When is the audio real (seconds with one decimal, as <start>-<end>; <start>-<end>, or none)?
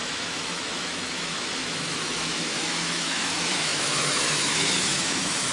none